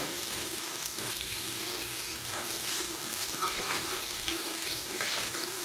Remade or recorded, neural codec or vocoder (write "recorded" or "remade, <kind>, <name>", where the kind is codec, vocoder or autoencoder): remade, codec, DAC